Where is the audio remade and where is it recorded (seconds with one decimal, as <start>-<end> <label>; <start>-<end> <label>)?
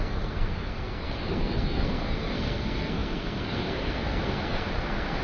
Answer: 0.0-5.2 remade